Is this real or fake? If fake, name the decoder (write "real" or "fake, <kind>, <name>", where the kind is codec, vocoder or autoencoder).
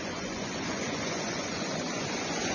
fake, vocoder, Vocos